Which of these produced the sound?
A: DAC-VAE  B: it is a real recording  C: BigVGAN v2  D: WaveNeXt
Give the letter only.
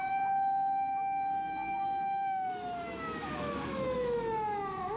A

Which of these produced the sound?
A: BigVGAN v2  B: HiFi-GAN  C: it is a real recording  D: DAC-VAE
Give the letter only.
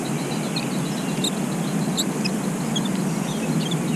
C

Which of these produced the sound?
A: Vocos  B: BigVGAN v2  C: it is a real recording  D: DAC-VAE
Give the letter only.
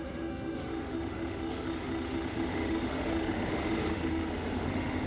D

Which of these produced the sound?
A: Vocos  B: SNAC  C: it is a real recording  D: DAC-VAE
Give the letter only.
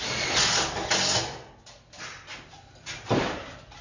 C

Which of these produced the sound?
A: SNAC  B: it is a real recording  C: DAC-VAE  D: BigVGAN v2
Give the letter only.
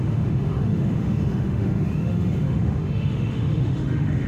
C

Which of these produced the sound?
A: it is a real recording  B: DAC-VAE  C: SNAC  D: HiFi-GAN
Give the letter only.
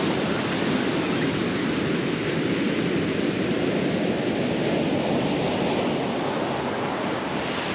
A